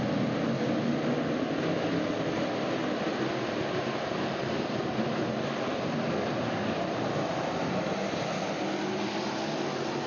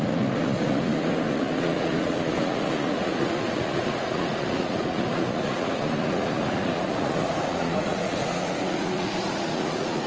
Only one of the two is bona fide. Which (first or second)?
first